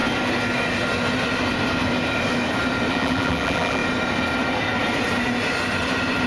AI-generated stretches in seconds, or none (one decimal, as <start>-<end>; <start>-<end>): 2.9-3.8